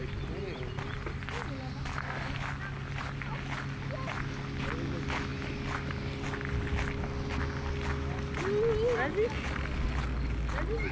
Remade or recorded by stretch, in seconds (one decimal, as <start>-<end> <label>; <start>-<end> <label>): 0.0-10.9 recorded